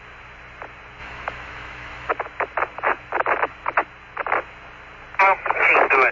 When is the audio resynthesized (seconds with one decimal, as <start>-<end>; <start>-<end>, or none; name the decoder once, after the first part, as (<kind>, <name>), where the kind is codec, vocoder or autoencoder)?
1.0-2.1 (autoencoder, DAC-VAE)